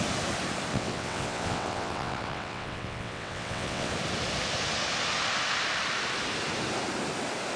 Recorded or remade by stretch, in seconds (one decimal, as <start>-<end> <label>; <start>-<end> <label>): 0.0-0.7 recorded; 0.7-3.9 remade; 3.9-7.6 recorded